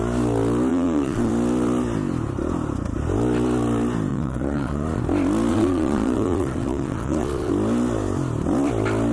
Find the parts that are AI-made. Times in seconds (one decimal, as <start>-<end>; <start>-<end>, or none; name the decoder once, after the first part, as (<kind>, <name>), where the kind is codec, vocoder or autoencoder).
0.7-1.3 (vocoder, Vocos); 4.1-5.0; 5.5-7.5